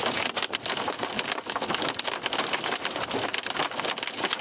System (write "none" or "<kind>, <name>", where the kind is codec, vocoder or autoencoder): none